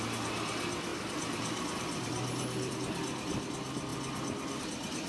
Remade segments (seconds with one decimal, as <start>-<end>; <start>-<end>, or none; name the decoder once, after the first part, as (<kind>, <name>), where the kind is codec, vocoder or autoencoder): 0.9-2.7 (vocoder, BigVGAN v2)